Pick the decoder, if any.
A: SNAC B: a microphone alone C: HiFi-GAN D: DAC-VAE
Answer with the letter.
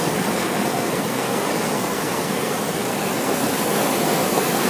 A